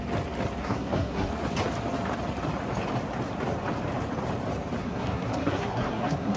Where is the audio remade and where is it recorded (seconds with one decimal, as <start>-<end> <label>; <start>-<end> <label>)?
0.0-0.6 recorded; 0.6-1.3 remade; 1.3-4.8 recorded; 4.8-6.4 remade